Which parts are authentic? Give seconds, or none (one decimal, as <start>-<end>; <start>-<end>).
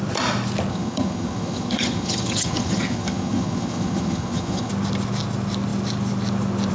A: 0.0-0.7; 4.7-6.7